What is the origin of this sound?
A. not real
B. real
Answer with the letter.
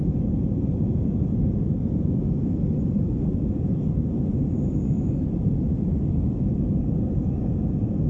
A